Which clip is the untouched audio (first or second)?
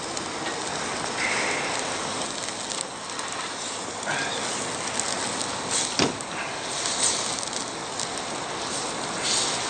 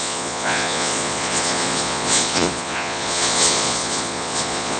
first